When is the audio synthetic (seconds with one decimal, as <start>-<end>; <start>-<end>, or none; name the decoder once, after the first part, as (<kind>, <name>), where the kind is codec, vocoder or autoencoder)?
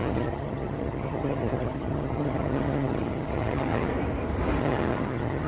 0.0-3.9 (vocoder, HiFi-GAN); 4.6-5.5